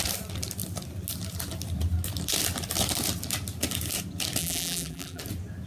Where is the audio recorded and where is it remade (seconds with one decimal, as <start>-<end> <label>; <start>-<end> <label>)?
0.0-4.4 recorded; 4.4-5.2 remade; 5.2-5.7 recorded